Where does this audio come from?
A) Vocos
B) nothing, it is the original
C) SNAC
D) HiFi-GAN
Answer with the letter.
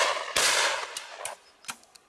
B